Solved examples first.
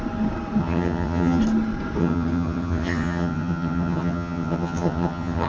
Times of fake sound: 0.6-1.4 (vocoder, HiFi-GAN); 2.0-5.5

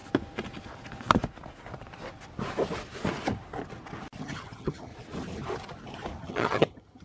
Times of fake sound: 4.2-4.9 (vocoder, HiFi-GAN); 6.2-7.0

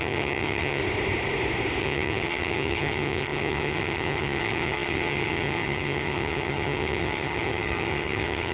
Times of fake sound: 0.0-0.8 (vocoder, HiFi-GAN); 1.8-8.5

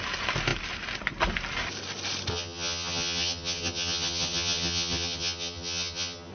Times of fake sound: 2.3-6.3 (vocoder, HiFi-GAN)

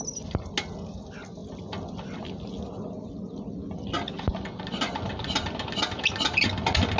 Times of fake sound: none

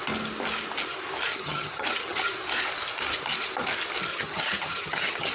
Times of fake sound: 1.3-2.3 (vocoder, HiFi-GAN); 4.1-5.3

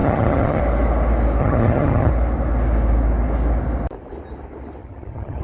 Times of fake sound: 0.0-0.6 (vocoder, HiFi-GAN); 1.4-2.1; 4.8-5.4